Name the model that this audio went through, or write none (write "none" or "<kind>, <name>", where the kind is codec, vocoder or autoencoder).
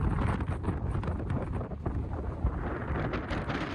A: vocoder, BigVGAN v2